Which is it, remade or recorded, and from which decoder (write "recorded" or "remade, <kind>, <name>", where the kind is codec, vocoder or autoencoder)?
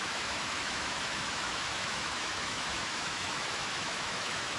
remade, autoencoder, DAC-VAE